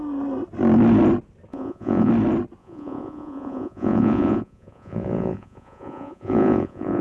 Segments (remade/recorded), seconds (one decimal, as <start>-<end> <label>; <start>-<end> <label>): 0.0-1.5 recorded; 1.5-2.1 remade; 2.1-2.6 recorded; 2.6-7.0 remade